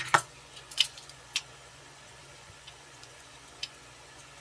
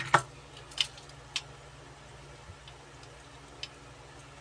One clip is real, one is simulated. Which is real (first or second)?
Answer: second